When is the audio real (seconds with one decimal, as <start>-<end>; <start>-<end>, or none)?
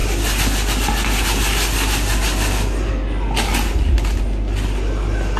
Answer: 0.0-5.4